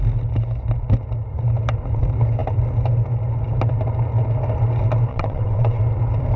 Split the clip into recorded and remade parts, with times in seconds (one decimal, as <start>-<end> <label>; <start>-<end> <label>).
0.0-5.1 recorded; 5.1-5.8 remade; 5.8-6.4 recorded